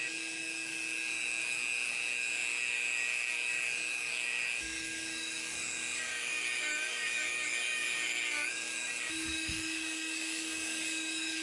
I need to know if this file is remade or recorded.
remade